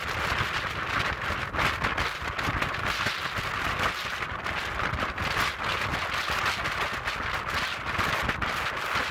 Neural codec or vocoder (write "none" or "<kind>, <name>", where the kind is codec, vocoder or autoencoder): none